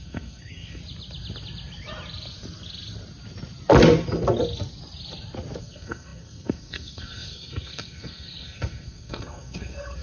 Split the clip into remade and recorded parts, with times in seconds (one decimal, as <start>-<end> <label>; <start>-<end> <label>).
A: 0.0-0.8 remade; 0.8-5.6 recorded; 5.6-10.0 remade